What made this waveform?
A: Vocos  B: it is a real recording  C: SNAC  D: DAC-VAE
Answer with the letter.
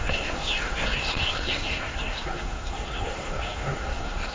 C